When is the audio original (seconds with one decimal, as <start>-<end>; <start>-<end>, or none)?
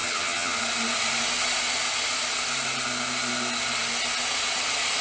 0.6-5.0